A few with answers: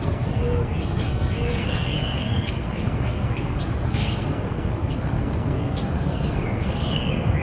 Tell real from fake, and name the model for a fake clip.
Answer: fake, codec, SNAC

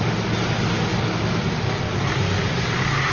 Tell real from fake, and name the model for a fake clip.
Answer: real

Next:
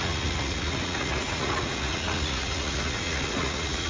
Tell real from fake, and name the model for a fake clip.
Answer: fake, vocoder, Vocos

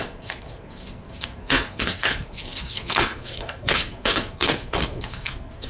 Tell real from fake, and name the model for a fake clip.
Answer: fake, codec, SNAC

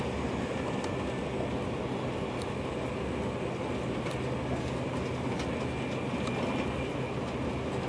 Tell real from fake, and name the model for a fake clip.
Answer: real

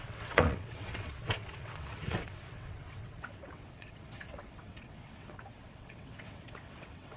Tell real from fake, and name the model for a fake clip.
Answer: fake, vocoder, WaveNeXt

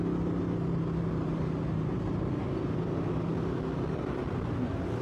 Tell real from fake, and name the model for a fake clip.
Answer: real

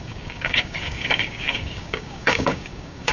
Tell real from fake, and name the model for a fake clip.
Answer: fake, codec, DAC